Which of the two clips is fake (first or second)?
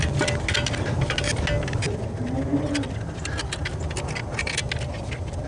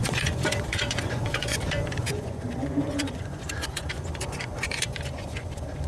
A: second